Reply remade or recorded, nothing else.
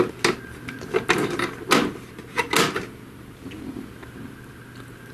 recorded